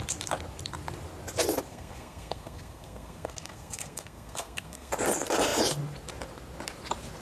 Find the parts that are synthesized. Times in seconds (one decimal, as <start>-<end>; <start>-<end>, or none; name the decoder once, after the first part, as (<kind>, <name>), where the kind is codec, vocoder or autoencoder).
1.7-4.9 (codec, SNAC)

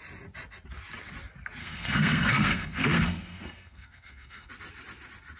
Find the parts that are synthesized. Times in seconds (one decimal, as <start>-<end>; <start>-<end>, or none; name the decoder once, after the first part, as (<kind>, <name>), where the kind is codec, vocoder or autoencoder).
1.6-4.5 (codec, SNAC)

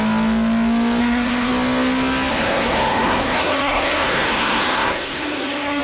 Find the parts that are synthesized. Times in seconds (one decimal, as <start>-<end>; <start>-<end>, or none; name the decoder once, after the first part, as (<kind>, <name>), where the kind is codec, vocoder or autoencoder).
1.0-1.5 (codec, SNAC); 2.3-5.8

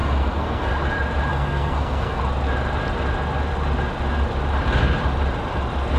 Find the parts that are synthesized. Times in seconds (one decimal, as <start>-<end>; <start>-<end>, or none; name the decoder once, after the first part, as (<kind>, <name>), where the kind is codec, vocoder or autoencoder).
0.0-0.7 (codec, SNAC); 1.3-2.2

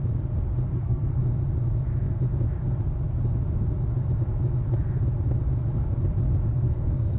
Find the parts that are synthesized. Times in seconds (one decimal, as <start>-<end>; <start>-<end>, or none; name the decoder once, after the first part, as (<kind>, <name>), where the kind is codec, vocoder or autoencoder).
0.7-1.2 (codec, SNAC); 6.5-7.2

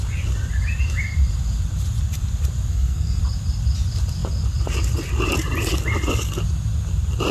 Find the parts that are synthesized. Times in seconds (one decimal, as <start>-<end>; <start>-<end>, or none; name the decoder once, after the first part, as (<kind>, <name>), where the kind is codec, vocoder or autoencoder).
2.7-3.2 (codec, SNAC)

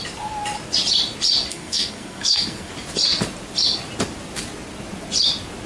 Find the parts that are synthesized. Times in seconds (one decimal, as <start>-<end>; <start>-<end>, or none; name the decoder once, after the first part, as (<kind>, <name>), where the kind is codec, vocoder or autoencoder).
1.5-2.7 (codec, SNAC)